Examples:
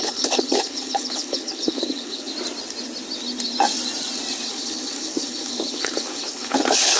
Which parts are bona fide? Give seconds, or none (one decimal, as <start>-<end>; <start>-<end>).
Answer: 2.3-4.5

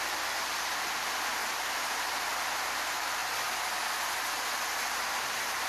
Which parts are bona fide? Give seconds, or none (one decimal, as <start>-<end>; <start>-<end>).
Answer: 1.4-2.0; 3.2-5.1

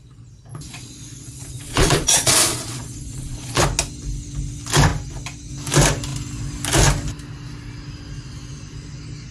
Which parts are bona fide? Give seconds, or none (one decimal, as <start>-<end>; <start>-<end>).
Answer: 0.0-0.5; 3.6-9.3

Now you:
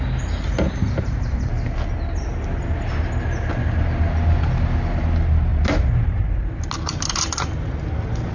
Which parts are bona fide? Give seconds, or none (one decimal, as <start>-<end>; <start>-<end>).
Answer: 0.0-8.3

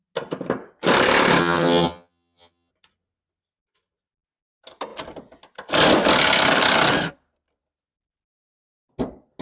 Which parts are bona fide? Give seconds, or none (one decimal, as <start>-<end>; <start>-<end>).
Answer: 0.0-1.4; 2.7-9.4

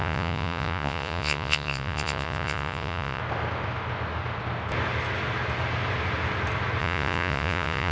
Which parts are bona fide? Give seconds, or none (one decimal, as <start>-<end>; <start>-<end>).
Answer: 3.2-6.8

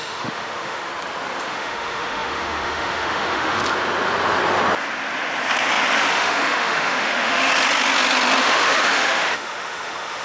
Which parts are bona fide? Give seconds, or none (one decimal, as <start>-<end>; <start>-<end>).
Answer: 0.9-1.4; 3.6-6.1; 7.5-8.4

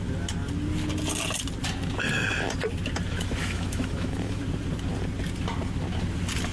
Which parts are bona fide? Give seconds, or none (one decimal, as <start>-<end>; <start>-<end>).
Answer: 0.0-3.4; 4.4-6.5